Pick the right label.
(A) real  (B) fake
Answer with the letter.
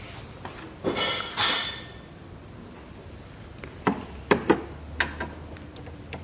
A